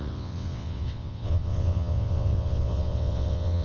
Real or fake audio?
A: fake